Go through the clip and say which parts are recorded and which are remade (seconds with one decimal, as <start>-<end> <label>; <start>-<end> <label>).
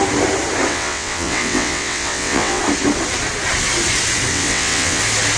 0.0-0.7 recorded; 0.7-2.6 remade; 2.6-4.3 recorded; 4.3-5.0 remade; 5.0-5.4 recorded